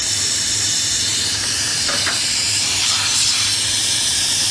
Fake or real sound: fake